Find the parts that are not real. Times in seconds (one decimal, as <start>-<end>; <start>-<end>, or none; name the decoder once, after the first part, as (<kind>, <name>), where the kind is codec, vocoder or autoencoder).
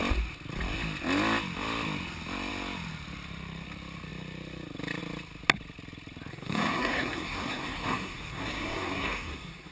6.3-9.7 (codec, SNAC)